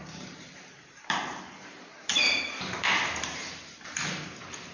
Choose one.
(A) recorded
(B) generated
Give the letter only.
B